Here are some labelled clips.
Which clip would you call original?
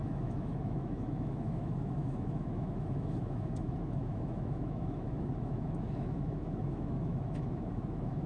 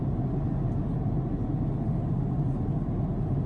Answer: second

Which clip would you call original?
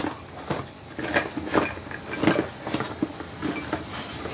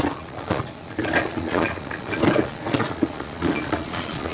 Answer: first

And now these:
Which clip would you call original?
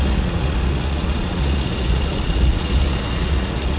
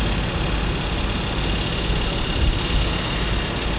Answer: second